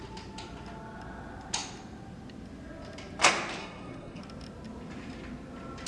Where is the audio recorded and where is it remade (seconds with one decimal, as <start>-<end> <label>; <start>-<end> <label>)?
0.0-3.6 recorded; 3.6-4.2 remade; 4.2-5.9 recorded